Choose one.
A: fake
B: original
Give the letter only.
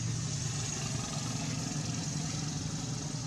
B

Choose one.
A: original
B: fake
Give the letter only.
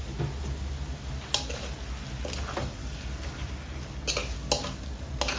A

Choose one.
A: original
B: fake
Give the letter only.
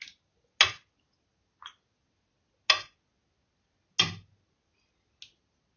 A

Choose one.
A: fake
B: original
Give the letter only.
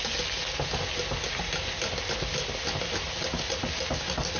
B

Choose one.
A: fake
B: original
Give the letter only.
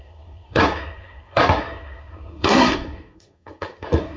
A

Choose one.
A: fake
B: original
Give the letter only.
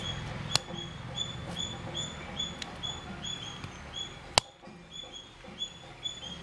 B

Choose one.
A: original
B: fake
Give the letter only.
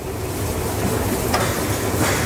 A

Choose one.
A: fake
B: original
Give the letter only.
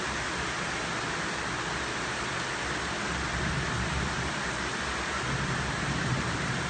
B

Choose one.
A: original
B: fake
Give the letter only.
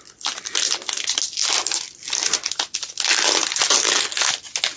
A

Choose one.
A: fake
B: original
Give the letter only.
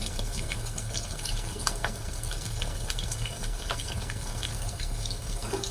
A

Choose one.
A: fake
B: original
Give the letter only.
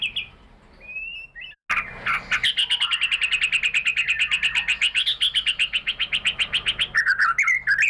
B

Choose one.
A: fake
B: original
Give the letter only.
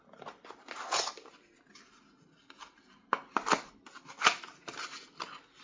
B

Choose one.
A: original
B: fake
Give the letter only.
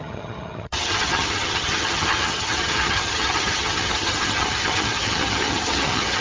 B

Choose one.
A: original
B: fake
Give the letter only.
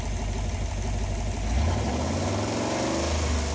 A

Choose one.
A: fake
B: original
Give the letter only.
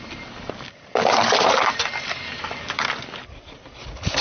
B